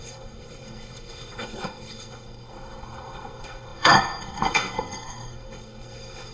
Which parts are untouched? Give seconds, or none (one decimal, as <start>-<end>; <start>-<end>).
none